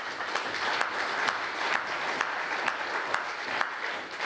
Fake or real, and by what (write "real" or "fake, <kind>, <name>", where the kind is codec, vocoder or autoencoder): real